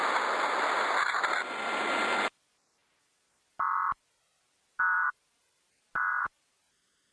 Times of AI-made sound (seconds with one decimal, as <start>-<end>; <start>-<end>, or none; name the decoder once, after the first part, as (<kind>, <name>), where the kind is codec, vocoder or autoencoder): 0.0-7.1 (vocoder, BigVGAN v2)